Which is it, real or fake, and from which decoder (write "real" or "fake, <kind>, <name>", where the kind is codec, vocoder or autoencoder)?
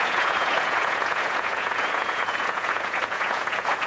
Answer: fake, vocoder, Vocos